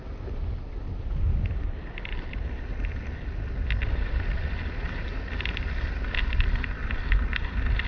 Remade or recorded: recorded